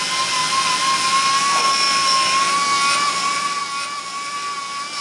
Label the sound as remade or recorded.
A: recorded